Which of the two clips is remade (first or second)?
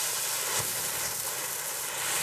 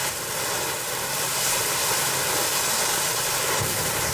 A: second